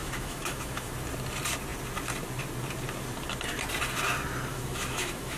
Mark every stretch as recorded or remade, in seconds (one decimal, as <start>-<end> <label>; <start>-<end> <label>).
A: 0.0-0.9 remade; 0.9-4.5 recorded; 4.5-5.4 remade